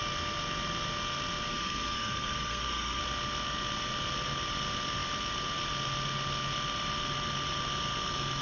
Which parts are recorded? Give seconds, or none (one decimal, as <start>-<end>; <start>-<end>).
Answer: 0.0-1.5; 3.0-8.4